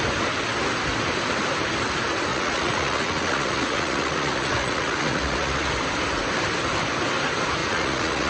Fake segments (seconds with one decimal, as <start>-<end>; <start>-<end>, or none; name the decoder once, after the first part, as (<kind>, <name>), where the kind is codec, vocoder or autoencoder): 2.3-5.7 (vocoder, Vocos); 7.6-8.3